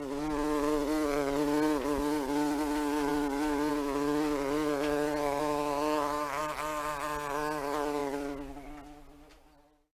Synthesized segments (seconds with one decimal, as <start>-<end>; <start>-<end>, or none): 5.4-6.4